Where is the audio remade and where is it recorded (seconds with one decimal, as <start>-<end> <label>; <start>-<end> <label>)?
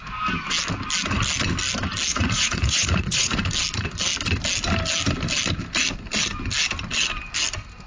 0.0-2.1 recorded; 2.1-3.4 remade; 3.4-7.9 recorded